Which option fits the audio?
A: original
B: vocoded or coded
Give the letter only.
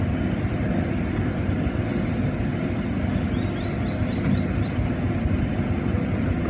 A